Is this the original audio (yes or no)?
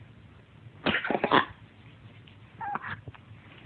yes